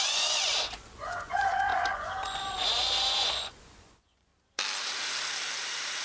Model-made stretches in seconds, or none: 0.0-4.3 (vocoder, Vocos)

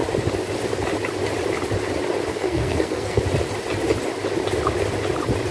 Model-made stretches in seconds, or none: 2.3-3.2 (codec, SNAC)

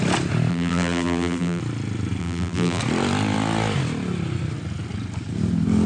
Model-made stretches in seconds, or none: 0.5-1.6 (vocoder, BigVGAN v2); 2.2-2.8

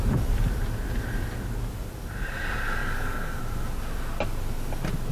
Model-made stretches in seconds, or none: 2.8-3.4 (codec, DAC)